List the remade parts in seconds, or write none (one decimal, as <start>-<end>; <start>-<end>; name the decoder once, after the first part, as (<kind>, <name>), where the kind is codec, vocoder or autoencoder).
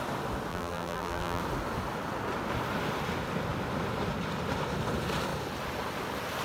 0.5-1.4 (vocoder, BigVGAN v2)